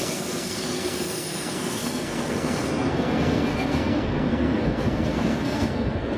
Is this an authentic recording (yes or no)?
no